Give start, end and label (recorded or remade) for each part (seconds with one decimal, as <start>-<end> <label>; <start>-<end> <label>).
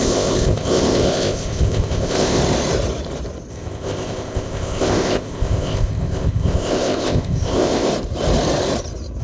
0.0-2.4 remade; 2.4-3.5 recorded; 3.5-7.9 remade; 7.9-9.2 recorded